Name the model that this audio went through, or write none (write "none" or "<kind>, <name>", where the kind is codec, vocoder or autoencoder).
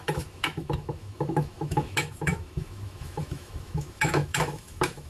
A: autoencoder, DAC-VAE